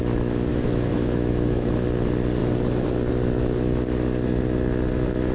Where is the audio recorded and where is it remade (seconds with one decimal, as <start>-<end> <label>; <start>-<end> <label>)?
0.0-0.5 recorded; 0.5-1.7 remade; 1.7-5.3 recorded